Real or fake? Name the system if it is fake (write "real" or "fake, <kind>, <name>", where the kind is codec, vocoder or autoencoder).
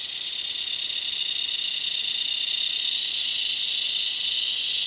real